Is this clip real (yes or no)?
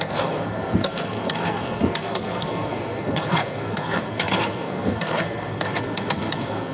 no